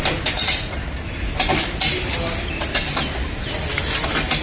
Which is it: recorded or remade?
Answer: recorded